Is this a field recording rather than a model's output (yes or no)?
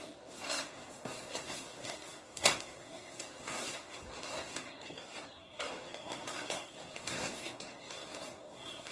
no